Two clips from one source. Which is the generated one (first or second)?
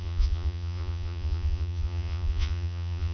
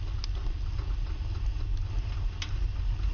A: first